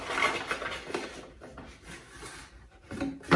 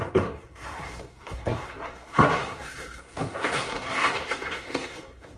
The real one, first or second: first